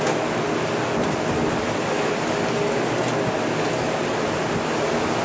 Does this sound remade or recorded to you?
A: recorded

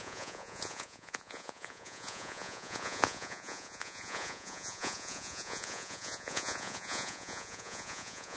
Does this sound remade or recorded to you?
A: remade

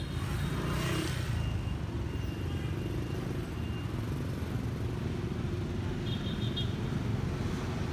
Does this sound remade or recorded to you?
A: recorded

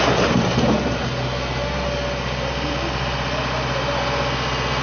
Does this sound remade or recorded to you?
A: recorded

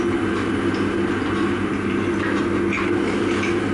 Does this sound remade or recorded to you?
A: recorded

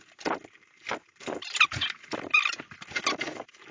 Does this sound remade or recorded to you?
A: recorded